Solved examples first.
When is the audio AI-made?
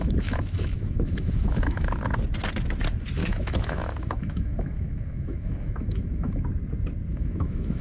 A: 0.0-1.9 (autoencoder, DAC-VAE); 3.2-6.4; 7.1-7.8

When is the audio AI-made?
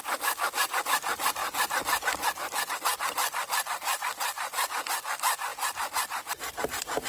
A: none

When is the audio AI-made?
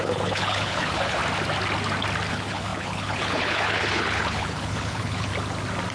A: 0.0-1.2 (codec, HILCodec); 2.3-5.3